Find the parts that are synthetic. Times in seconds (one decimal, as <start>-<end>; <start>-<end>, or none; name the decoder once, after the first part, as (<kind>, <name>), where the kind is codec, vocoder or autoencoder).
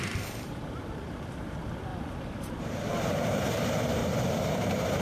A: 0.0-4.0 (vocoder, BigVGAN v2); 4.5-5.0